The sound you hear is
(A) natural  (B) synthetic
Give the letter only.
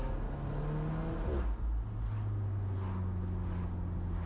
A